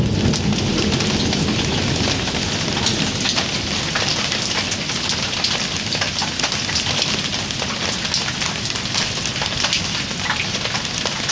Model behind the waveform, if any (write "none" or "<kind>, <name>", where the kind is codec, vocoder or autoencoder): none